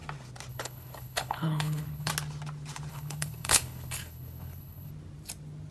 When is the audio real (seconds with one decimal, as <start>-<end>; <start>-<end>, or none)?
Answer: 0.0-0.5; 2.1-2.9; 4.9-5.7